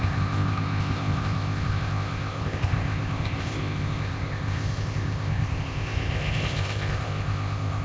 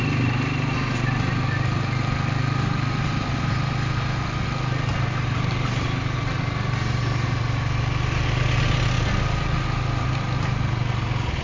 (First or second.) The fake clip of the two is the first